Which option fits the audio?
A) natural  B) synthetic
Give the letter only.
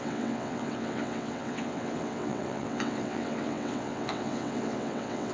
B